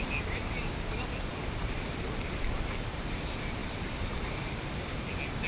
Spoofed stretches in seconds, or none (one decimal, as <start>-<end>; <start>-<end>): 1.3-2.3; 3.6-5.0